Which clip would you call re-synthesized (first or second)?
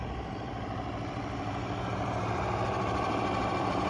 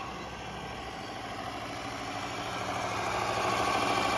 first